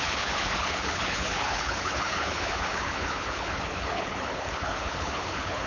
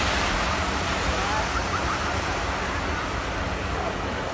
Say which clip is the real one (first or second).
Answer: second